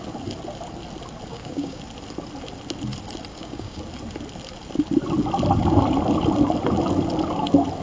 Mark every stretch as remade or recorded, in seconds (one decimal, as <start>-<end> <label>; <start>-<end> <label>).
0.0-1.3 recorded; 1.3-1.8 remade; 1.8-3.3 recorded; 3.3-3.8 remade; 3.8-7.8 recorded